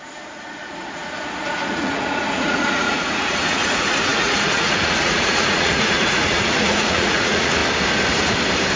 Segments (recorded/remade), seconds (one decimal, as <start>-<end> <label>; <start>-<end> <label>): 0.0-7.6 remade; 7.6-8.8 recorded